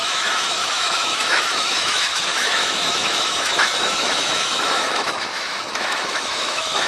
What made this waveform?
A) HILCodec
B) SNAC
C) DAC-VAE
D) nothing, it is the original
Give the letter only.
C